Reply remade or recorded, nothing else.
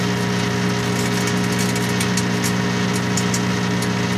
recorded